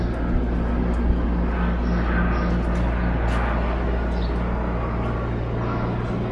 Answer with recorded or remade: recorded